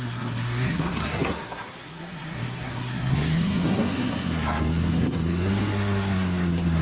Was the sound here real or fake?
fake